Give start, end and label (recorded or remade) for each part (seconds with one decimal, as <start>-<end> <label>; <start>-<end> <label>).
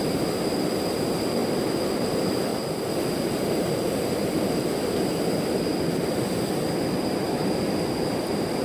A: 0.0-8.6 recorded